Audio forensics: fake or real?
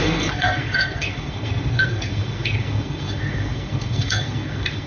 fake